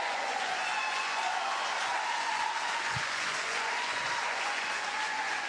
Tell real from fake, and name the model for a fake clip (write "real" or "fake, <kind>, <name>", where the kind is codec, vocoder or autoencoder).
fake, vocoder, Vocos